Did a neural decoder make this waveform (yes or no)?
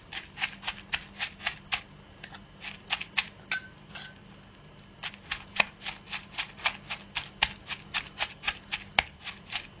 no